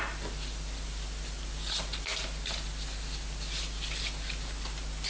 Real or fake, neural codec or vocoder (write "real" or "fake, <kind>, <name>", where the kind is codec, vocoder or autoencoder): real